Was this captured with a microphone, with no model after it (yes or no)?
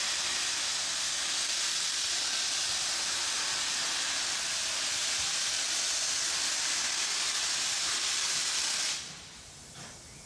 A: no